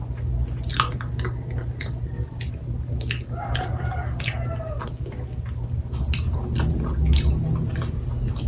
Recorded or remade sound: recorded